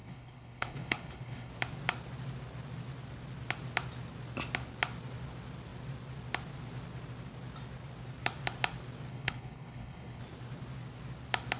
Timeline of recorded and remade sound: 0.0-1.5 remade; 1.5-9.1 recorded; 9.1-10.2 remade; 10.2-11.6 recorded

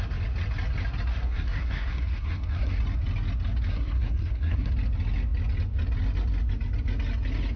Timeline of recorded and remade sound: 0.0-1.1 recorded; 1.1-2.8 remade; 2.8-3.7 recorded; 3.7-4.7 remade; 4.7-7.6 recorded